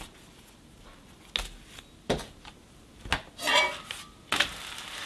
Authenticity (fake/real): real